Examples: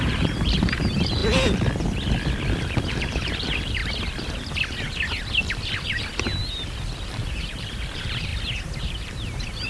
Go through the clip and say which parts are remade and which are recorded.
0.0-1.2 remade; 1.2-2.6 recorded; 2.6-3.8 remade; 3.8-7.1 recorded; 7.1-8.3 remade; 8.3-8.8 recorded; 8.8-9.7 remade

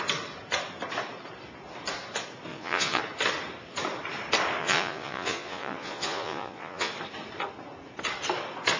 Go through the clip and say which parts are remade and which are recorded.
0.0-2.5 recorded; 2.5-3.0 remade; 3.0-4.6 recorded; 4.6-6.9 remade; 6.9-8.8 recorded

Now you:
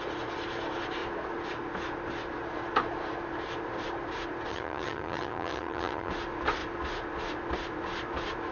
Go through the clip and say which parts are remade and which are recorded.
0.0-4.5 recorded; 4.5-6.1 remade; 6.1-8.5 recorded